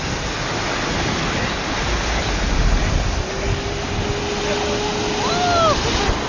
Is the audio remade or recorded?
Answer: recorded